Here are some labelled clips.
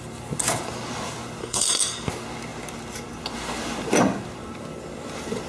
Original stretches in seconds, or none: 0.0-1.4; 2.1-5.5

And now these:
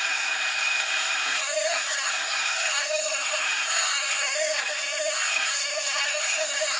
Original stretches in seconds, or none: none